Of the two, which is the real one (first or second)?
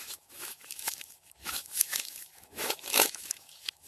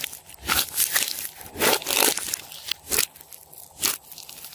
second